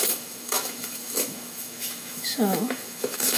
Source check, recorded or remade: remade